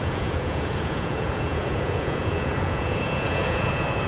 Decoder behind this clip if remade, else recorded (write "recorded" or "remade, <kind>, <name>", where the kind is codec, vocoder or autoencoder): remade, vocoder, Vocos